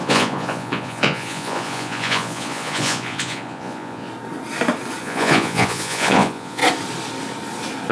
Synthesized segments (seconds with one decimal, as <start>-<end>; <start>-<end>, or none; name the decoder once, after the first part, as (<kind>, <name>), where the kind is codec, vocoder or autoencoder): 0.0-4.1 (vocoder, Vocos); 5.0-6.6